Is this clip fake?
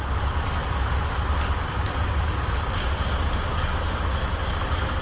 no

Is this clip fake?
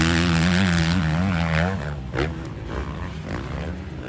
no